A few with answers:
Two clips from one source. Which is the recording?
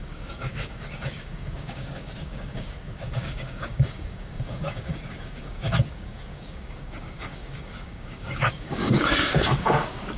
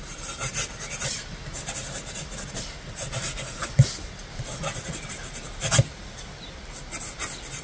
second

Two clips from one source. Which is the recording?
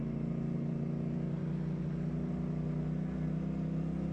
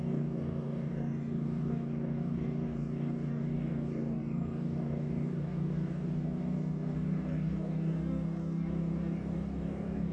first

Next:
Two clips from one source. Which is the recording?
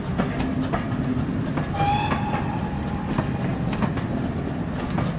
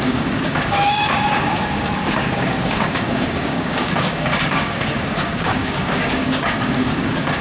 first